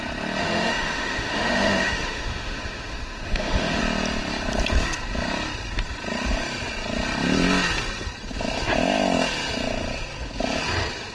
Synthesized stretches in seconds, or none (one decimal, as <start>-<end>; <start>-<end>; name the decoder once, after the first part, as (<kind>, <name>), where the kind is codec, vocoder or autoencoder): 0.4-3.8 (autoencoder, DAC-VAE)

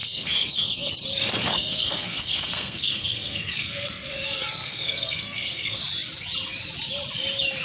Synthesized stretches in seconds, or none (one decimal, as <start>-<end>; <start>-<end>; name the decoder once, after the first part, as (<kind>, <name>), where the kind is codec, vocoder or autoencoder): 0.0-0.9 (codec, SNAC); 1.5-5.8